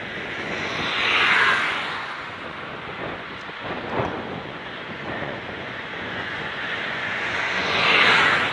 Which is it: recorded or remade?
remade